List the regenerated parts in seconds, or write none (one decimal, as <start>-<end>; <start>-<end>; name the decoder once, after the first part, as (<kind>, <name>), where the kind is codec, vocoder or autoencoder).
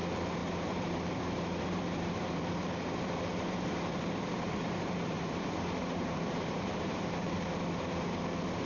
0.4-2.5 (vocoder, BigVGAN v2); 3.3-7.6